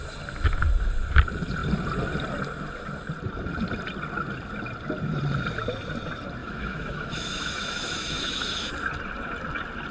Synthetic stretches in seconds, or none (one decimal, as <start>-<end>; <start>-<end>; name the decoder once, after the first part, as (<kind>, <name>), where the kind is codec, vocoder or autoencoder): 6.4-8.7 (autoencoder, DAC-VAE)